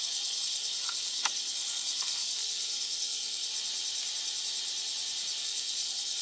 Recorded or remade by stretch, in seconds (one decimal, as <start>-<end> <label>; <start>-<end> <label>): 0.0-3.5 remade; 3.5-5.4 recorded; 5.4-6.2 remade